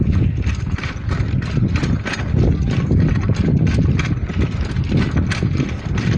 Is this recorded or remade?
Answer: recorded